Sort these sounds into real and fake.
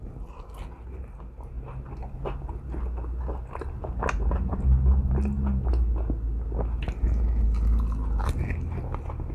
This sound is real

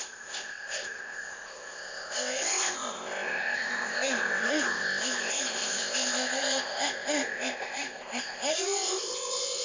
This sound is fake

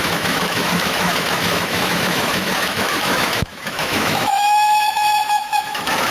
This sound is fake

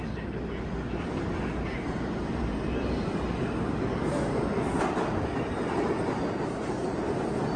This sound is real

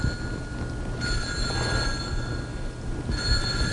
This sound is real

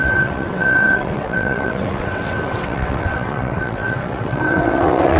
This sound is fake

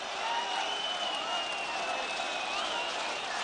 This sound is real